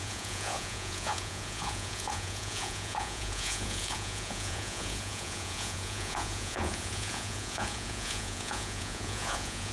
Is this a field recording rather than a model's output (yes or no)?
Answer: no